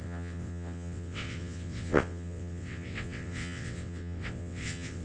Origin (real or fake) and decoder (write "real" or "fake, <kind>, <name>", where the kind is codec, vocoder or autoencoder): fake, vocoder, WaveNeXt